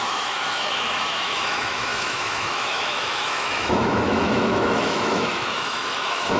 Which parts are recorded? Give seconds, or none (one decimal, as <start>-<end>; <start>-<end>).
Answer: none